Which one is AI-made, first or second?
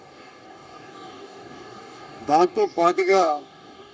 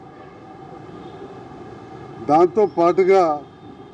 first